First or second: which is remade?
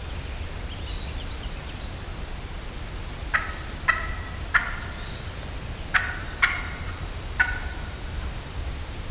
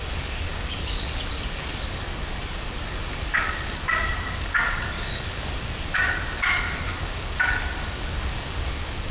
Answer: second